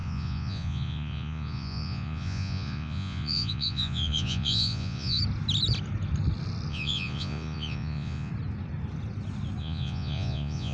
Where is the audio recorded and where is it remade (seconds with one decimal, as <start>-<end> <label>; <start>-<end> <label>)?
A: 0.0-5.2 remade; 5.2-6.7 recorded; 6.7-8.3 remade; 8.3-9.6 recorded; 9.6-10.7 remade